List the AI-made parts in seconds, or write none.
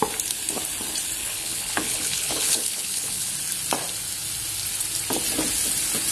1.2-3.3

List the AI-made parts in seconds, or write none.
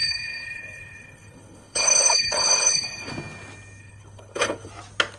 0.0-3.1; 3.8-4.7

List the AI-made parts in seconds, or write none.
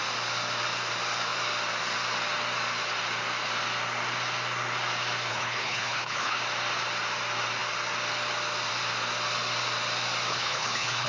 5.3-6.4; 10.3-11.1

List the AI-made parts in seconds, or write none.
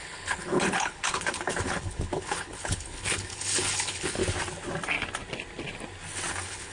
0.0-4.2; 6.3-6.7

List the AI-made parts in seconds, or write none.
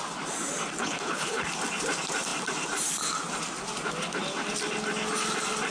0.8-1.4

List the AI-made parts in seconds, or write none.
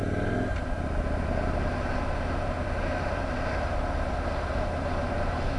none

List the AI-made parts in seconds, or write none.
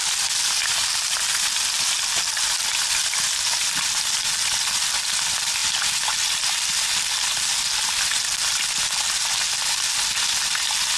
none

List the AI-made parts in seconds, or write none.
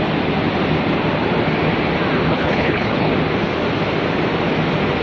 2.3-3.1